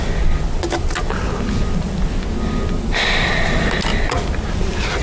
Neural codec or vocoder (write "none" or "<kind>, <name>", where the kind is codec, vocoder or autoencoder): none